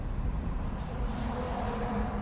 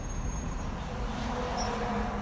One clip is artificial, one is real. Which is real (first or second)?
second